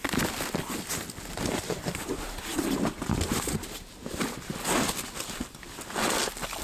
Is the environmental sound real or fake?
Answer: real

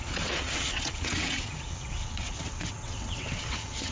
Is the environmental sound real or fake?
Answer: fake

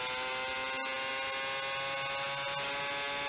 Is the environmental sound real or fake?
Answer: real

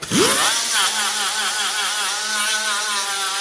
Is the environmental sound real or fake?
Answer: real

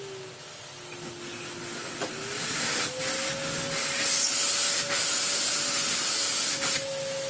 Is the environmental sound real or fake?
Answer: real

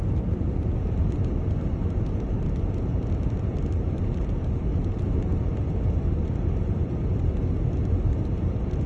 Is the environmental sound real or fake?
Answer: real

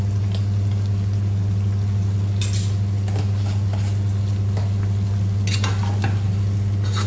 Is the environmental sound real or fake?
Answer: real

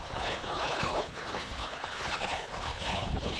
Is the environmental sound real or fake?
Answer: fake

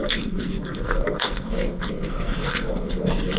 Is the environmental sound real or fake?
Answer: fake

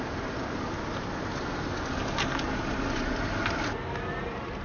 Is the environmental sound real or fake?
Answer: real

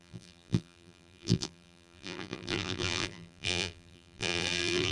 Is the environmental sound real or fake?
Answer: fake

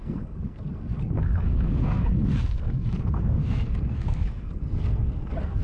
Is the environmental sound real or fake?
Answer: fake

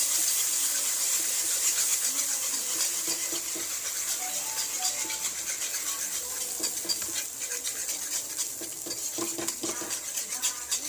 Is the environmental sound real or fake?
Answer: real